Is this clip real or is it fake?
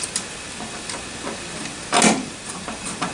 real